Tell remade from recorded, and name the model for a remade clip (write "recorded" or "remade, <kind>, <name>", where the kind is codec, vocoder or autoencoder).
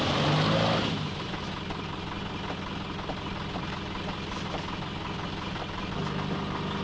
recorded